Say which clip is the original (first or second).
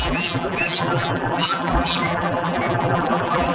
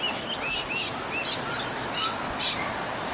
second